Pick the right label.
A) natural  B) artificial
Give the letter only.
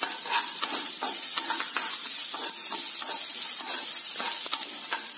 A